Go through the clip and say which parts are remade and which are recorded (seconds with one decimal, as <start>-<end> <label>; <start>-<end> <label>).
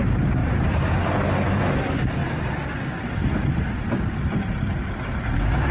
0.0-0.4 recorded; 0.4-1.6 remade; 1.6-5.7 recorded